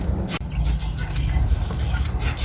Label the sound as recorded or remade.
recorded